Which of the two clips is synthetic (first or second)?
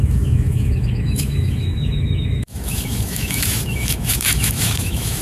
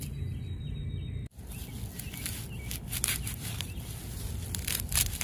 first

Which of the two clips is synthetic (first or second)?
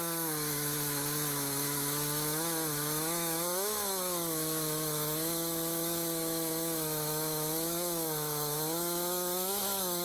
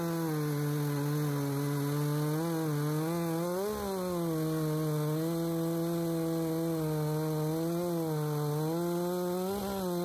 first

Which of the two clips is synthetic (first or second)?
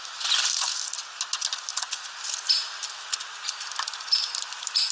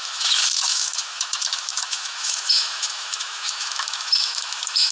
second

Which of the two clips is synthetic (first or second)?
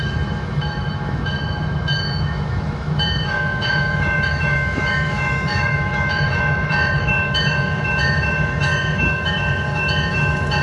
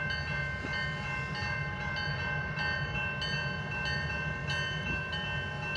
first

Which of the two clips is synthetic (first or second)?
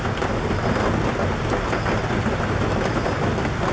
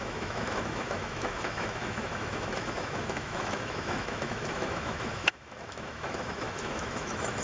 second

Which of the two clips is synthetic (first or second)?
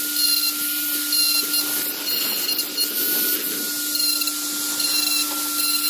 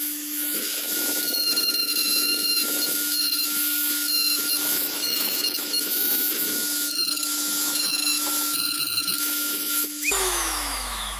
second